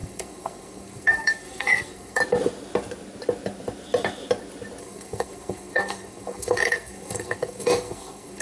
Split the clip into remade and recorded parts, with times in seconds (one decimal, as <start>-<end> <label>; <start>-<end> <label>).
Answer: 0.0-2.2 remade; 2.2-4.8 recorded; 4.8-8.4 remade